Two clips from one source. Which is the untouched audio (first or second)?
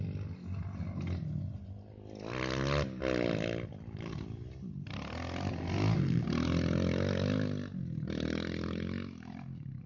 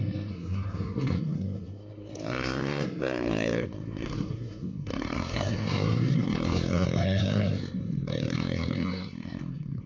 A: first